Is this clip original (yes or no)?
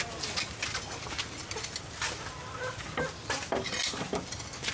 yes